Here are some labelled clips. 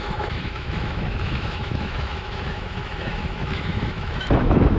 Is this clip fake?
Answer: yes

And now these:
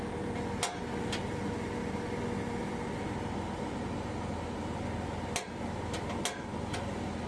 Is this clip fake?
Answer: no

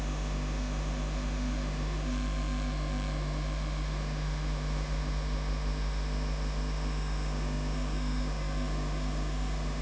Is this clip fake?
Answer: yes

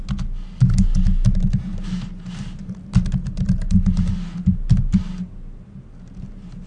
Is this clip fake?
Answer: no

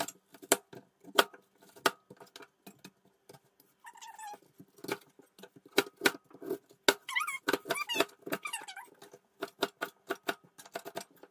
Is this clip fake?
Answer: no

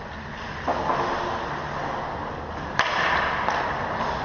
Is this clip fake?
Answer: no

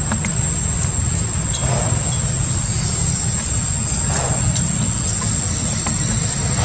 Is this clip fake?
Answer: no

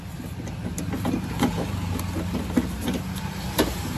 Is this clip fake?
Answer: no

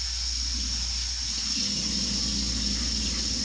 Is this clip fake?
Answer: no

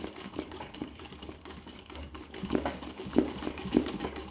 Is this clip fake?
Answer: yes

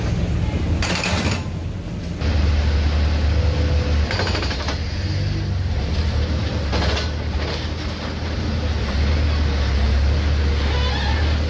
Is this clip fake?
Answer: no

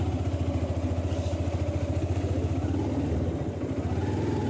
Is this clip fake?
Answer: no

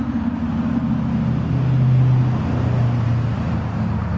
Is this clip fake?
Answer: no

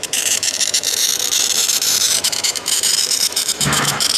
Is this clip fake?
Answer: yes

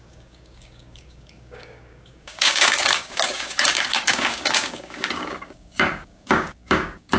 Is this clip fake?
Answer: yes